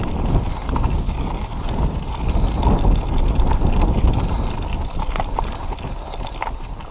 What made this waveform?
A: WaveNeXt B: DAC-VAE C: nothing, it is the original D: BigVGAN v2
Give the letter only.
C